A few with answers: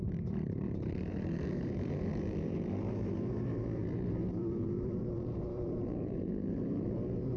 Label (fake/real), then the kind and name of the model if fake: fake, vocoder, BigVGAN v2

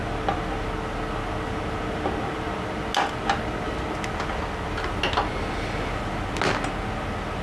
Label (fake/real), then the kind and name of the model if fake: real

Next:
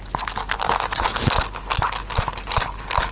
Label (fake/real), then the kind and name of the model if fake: real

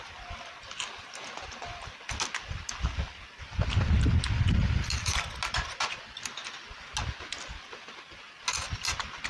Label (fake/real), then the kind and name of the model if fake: real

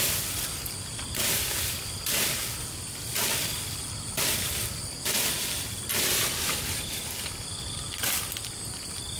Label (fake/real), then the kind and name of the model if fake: fake, vocoder, BigVGAN v2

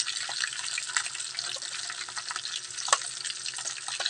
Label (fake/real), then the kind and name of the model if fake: real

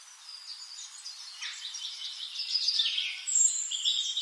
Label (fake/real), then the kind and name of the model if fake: fake, vocoder, BigVGAN v2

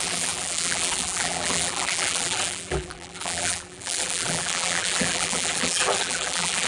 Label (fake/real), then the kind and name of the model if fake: fake, vocoder, BigVGAN v2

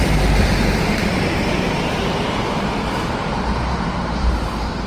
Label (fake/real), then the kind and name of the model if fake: fake, vocoder, BigVGAN v2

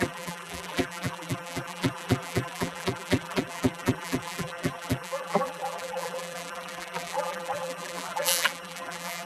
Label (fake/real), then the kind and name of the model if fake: fake, vocoder, BigVGAN v2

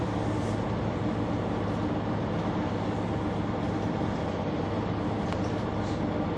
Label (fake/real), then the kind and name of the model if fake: real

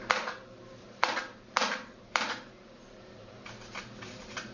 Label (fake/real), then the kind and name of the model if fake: fake, vocoder, BigVGAN v2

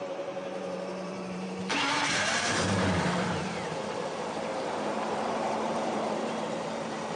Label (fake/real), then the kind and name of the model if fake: fake, vocoder, BigVGAN v2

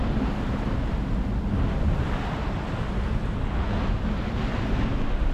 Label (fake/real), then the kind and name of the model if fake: real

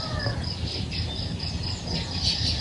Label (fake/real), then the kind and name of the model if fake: real